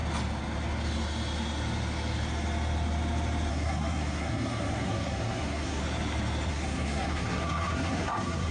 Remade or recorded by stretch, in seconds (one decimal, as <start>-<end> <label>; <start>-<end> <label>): 0.0-3.5 recorded; 3.5-5.8 remade; 5.8-6.5 recorded; 6.5-8.5 remade